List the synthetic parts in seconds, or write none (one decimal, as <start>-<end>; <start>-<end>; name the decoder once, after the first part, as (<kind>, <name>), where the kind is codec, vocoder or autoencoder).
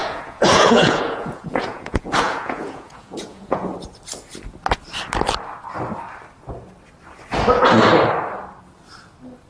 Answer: 0.0-3.7 (vocoder, Vocos)